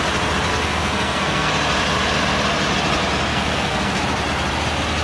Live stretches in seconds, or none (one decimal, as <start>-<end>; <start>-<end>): 0.0-0.5; 1.5-3.3; 4.0-5.0